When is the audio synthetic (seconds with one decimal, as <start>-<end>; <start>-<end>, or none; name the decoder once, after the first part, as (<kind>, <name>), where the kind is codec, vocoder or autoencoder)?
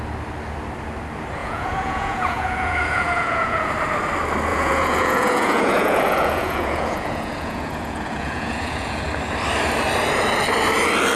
1.4-3.7 (vocoder, Vocos); 4.5-9.0